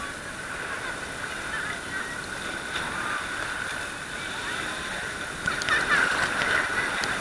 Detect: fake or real real